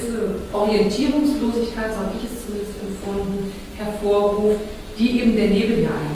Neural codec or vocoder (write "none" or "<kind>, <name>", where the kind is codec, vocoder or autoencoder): none